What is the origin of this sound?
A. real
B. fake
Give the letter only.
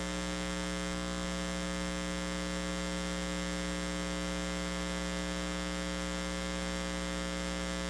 A